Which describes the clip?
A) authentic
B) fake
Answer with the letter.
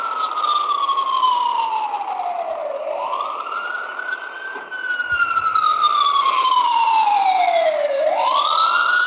A